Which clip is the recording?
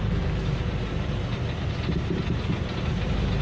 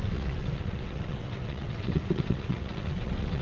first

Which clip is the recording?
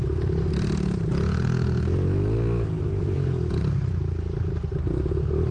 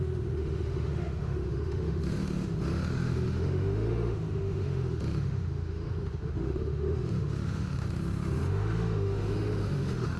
first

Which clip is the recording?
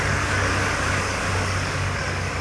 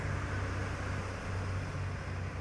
second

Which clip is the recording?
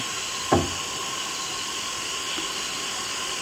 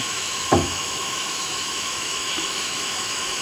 first